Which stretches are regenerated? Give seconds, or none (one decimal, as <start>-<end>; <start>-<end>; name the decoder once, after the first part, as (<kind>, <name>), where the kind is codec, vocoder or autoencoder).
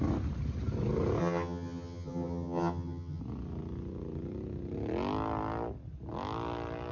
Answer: 1.2-3.2 (vocoder, HiFi-GAN)